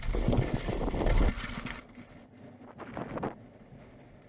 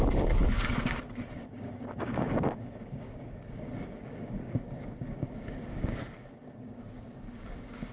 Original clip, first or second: first